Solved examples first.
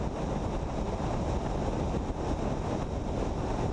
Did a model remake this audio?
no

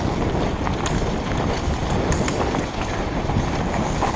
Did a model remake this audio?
no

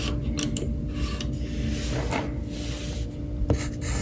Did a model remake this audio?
no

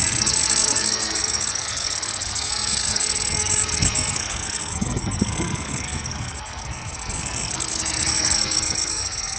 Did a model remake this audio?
yes